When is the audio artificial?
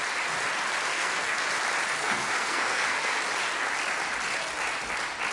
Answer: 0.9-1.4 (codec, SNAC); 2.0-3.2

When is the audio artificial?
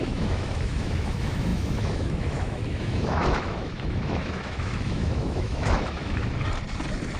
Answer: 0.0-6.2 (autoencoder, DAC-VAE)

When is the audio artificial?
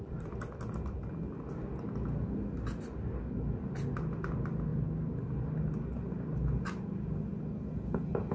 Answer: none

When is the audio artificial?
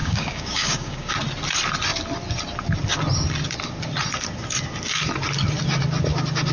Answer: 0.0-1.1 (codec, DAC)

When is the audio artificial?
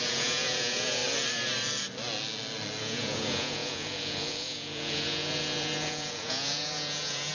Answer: 0.0-1.0 (vocoder, Vocos); 2.8-7.3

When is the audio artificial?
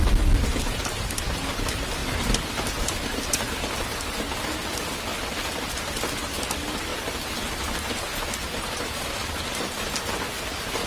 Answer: none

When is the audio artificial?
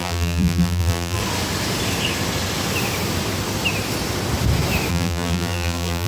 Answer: 0.0-1.2 (vocoder, BigVGAN v2); 4.9-6.1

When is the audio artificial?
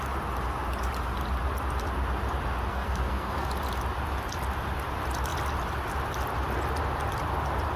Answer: 2.7-3.5 (codec, SNAC)